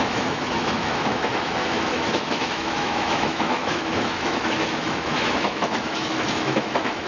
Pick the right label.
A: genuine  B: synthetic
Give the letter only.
B